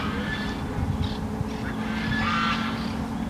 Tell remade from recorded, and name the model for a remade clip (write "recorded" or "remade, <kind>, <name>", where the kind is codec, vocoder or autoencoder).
recorded